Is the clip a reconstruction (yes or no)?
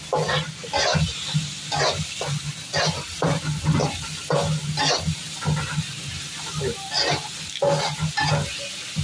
no